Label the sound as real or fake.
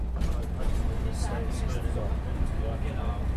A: real